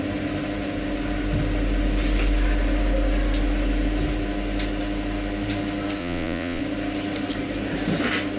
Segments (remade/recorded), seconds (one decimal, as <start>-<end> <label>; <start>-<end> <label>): 0.0-6.0 recorded; 6.0-6.6 remade; 6.6-8.4 recorded